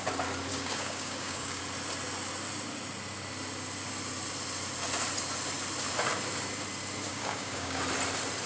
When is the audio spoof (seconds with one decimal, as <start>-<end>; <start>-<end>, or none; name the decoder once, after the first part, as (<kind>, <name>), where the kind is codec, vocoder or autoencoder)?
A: 0.5-1.6 (codec, DAC); 7.1-7.8